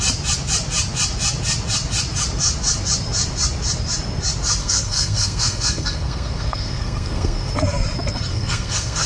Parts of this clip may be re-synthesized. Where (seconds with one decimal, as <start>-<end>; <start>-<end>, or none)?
4.6-7.5; 8.3-9.1